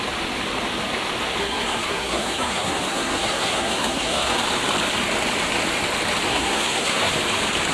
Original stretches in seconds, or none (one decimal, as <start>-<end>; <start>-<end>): 0.0-1.4; 4.4-6.3; 7.1-7.7